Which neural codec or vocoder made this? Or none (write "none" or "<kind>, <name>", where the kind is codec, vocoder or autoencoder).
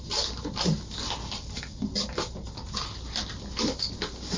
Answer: none